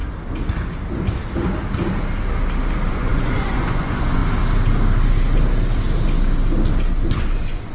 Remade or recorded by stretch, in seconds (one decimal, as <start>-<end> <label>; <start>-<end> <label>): 0.0-2.9 recorded; 2.9-4.2 remade; 4.2-7.1 recorded; 7.1-7.7 remade